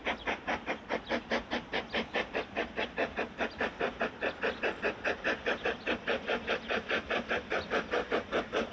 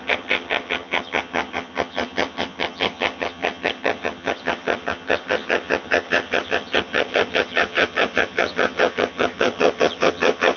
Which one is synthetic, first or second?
second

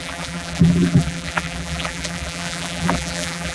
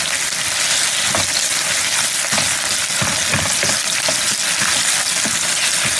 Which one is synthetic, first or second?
first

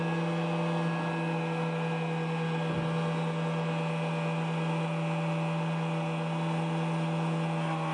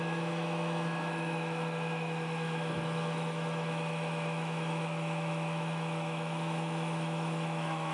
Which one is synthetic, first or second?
second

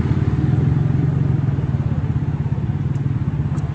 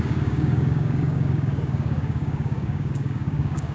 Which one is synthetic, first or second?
second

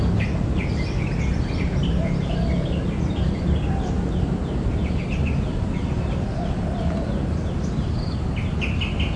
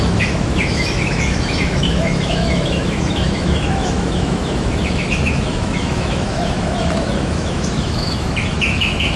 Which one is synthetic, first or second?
second